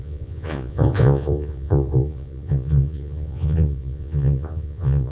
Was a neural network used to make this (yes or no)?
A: yes